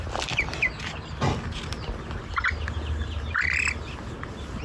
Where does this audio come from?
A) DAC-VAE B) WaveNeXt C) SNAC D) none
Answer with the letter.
D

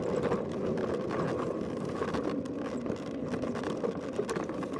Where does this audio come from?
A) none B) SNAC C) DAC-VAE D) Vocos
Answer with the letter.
A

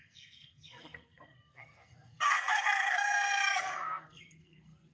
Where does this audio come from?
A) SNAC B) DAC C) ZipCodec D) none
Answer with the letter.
A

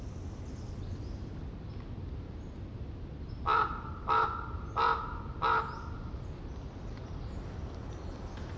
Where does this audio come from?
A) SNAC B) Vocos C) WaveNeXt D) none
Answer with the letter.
D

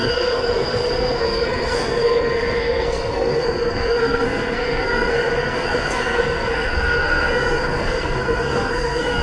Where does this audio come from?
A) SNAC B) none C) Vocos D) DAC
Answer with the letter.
A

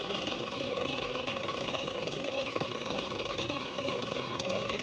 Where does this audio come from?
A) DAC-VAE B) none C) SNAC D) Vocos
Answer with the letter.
C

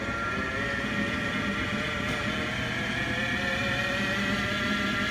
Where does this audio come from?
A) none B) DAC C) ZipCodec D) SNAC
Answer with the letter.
A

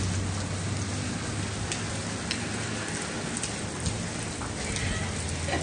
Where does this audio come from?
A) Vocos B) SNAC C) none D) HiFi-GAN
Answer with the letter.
C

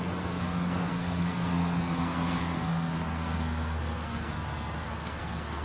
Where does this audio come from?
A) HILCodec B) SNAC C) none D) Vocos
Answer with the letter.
B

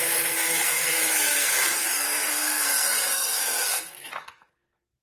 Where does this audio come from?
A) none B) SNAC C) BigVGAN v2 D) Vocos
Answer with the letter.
B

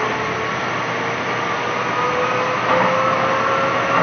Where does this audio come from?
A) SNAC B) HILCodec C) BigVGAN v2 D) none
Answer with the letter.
D